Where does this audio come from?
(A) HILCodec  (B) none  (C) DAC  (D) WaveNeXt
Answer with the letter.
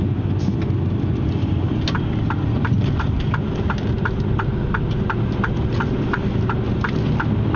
B